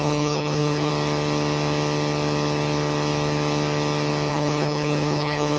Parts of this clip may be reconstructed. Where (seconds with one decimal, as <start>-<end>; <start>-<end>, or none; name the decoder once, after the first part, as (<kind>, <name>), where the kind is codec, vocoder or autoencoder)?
0.0-0.9 (codec, HILCodec); 4.3-5.6